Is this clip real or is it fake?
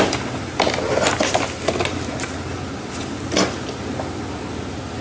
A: real